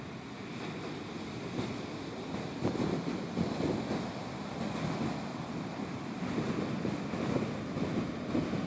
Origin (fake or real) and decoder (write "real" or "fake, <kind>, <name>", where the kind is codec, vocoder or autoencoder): real